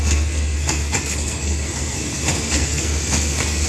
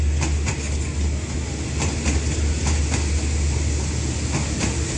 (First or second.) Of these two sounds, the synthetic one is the first